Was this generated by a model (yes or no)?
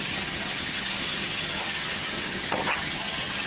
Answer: yes